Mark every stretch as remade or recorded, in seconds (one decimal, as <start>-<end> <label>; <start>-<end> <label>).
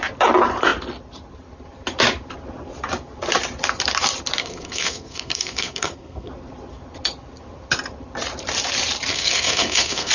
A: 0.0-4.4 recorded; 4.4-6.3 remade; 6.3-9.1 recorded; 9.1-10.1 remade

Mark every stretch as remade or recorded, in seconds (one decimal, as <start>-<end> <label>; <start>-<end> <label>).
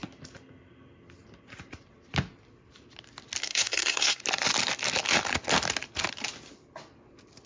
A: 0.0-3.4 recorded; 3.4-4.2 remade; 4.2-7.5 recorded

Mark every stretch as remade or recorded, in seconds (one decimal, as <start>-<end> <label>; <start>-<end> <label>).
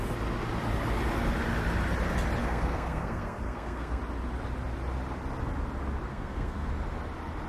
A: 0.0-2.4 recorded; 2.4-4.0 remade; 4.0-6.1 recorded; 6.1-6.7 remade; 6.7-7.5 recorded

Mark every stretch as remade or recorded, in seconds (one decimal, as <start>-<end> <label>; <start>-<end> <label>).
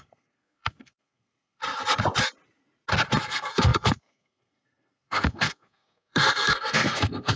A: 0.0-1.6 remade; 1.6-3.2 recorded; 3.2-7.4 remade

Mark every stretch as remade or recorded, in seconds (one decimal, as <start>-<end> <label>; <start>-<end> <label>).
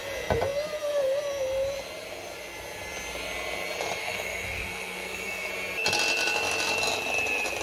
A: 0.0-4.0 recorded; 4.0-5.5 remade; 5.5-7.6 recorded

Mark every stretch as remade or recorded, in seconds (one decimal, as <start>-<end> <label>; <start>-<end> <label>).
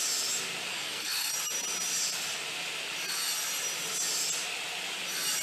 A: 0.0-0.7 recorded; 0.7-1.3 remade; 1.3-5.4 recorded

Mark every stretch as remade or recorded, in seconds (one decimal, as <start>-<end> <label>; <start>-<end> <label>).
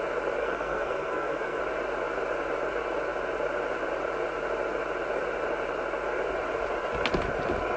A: 0.0-0.4 recorded; 0.4-1.6 remade; 1.6-7.8 recorded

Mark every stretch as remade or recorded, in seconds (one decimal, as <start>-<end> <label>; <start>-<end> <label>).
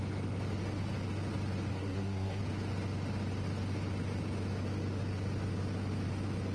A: 0.0-1.7 recorded; 1.7-2.4 remade; 2.4-6.5 recorded